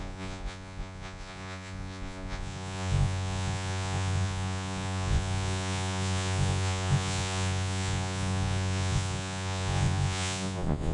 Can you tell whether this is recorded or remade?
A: remade